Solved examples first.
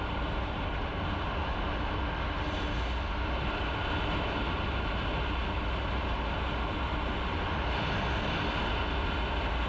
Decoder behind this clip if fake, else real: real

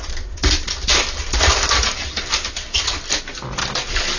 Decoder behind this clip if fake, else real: real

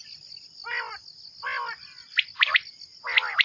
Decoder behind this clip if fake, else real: real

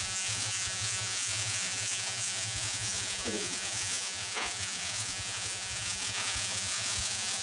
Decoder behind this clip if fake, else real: fake, vocoder, Vocos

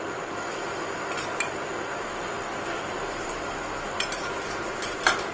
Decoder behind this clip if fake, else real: fake, vocoder, BigVGAN v2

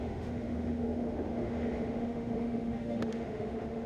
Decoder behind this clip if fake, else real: fake, autoencoder, DAC-VAE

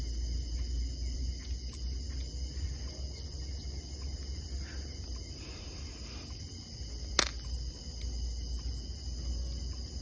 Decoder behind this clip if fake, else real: real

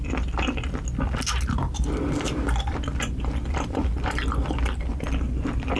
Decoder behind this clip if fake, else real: real